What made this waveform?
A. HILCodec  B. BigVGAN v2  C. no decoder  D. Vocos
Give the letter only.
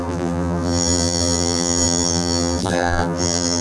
B